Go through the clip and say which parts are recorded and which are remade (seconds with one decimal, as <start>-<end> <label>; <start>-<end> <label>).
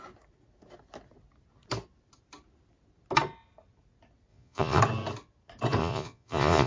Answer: 0.0-4.3 recorded; 4.3-4.8 remade; 4.8-5.8 recorded; 5.8-6.7 remade